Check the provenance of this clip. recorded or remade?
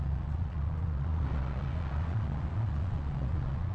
remade